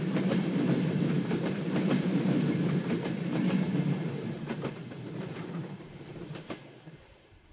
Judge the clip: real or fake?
fake